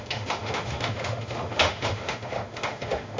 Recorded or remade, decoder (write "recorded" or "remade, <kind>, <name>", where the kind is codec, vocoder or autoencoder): remade, autoencoder, DAC-VAE